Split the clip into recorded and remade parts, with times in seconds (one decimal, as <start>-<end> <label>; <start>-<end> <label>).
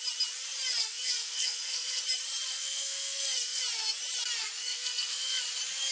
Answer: 0.0-0.8 recorded; 0.8-2.0 remade; 2.0-2.5 recorded; 2.5-3.6 remade; 3.6-4.6 recorded; 4.6-5.4 remade; 5.4-5.9 recorded